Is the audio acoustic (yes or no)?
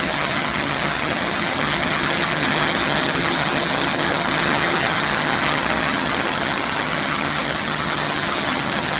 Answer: no